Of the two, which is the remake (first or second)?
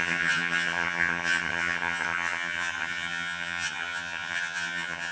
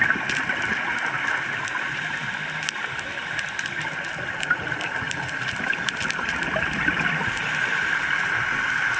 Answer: first